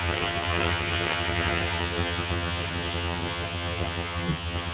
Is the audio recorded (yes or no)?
no